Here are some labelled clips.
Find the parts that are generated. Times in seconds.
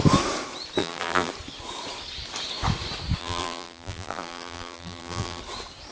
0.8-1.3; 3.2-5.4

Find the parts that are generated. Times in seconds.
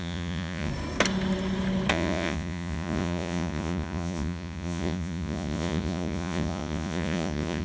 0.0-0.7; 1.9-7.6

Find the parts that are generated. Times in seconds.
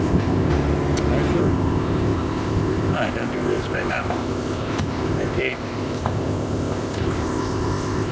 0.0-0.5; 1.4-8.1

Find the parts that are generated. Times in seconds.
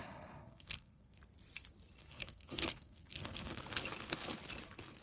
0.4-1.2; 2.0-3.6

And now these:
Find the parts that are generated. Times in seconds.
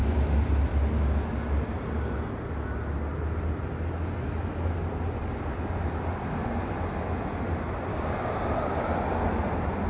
7.9-8.5